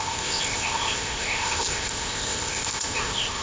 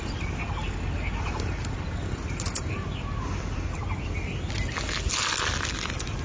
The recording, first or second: second